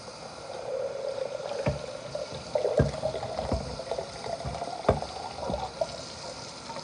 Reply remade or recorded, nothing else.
recorded